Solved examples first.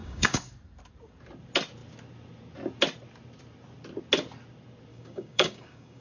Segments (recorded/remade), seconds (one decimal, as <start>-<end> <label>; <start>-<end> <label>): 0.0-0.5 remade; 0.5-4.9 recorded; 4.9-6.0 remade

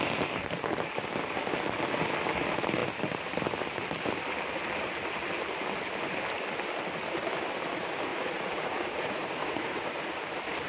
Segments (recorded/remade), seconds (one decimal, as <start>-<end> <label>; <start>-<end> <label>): 0.0-8.1 recorded; 8.1-10.1 remade; 10.1-10.7 recorded

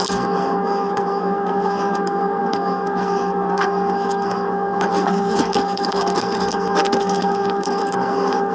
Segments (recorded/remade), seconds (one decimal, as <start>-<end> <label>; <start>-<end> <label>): 0.0-8.5 remade

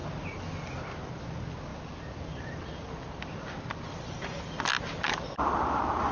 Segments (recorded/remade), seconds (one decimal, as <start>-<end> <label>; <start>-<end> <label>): 0.0-6.1 recorded